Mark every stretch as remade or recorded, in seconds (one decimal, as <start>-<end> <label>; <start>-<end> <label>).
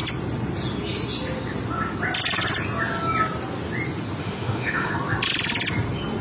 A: 0.0-4.2 recorded; 4.2-4.9 remade; 4.9-6.2 recorded